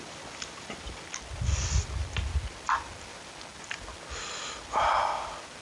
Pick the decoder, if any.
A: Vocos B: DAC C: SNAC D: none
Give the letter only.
D